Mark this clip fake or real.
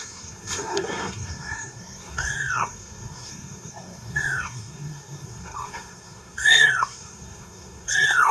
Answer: fake